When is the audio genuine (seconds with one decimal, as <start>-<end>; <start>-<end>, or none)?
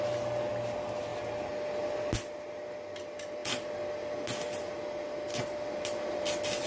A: 0.0-6.7